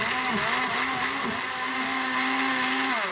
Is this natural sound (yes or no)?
yes